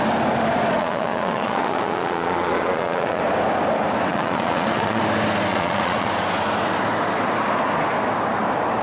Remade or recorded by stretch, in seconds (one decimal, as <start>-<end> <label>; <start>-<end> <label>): 0.0-0.8 recorded; 0.8-3.2 remade; 3.2-4.1 recorded; 4.1-5.0 remade; 5.0-5.5 recorded; 5.5-6.1 remade; 6.1-8.8 recorded